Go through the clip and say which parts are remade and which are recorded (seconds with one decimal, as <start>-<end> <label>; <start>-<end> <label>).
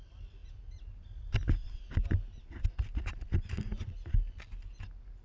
0.0-5.2 recorded